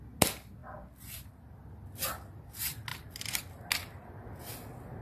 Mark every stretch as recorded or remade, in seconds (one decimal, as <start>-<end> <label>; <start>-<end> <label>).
0.0-2.9 recorded; 2.9-3.6 remade; 3.6-5.0 recorded